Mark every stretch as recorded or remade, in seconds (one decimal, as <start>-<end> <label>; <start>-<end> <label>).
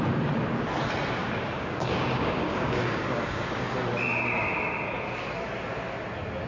0.0-1.2 recorded; 1.2-3.6 remade; 3.6-6.5 recorded